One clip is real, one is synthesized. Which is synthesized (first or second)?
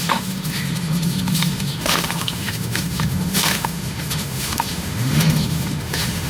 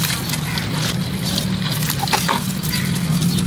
first